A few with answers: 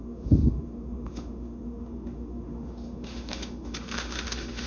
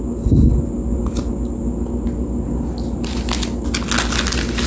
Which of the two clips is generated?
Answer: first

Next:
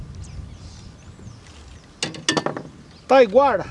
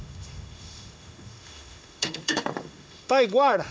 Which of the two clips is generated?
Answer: second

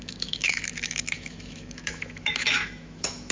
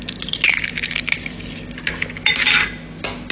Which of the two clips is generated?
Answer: first